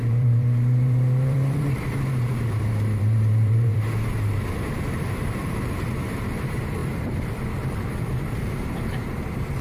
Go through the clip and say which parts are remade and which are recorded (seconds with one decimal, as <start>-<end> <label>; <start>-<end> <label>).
0.0-9.6 remade